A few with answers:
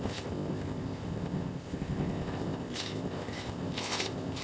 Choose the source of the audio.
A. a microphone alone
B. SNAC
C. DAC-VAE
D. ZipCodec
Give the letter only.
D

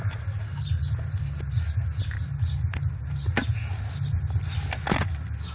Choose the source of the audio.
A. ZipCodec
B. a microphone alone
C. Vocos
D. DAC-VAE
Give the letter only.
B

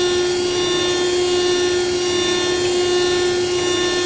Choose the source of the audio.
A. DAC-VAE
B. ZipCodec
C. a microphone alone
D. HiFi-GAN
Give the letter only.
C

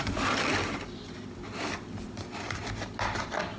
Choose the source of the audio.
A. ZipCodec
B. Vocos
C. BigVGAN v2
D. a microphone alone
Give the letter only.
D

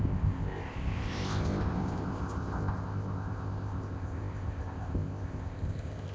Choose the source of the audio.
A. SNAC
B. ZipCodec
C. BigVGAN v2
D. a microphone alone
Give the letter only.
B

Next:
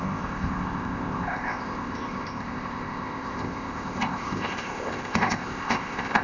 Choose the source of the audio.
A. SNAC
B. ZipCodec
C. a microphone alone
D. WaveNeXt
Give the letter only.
B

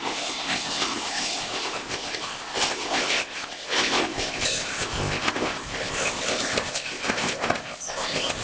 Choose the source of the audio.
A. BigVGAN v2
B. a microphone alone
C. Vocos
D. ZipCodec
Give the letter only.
D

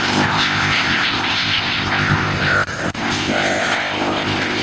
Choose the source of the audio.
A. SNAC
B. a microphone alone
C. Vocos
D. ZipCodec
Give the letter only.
D